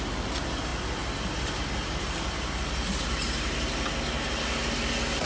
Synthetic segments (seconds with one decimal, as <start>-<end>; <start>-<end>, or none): none